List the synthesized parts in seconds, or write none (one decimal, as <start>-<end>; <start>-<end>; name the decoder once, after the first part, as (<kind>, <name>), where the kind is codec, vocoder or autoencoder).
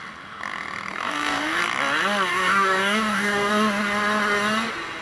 0.9-1.6 (codec, DAC); 2.3-3.5